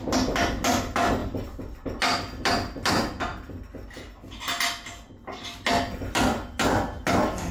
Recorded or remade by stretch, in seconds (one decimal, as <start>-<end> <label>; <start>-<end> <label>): 0.0-7.5 recorded